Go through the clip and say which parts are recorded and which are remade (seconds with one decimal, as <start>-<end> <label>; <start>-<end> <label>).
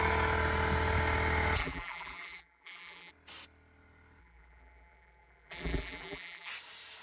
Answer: 0.0-1.6 recorded; 1.6-3.1 remade; 3.1-4.2 recorded; 4.2-6.5 remade; 6.5-7.0 recorded